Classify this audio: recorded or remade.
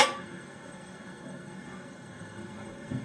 remade